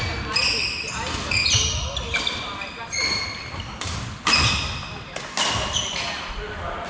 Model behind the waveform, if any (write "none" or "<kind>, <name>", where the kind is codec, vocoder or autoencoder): none